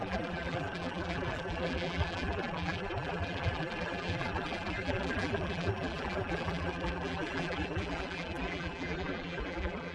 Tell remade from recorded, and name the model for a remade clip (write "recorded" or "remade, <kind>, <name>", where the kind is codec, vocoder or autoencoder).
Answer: remade, vocoder, BigVGAN v2